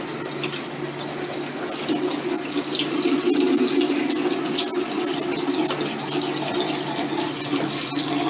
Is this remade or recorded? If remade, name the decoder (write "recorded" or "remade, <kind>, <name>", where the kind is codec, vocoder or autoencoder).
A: recorded